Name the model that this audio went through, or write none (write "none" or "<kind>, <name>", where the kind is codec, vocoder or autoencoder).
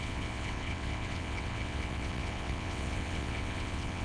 vocoder, WaveNeXt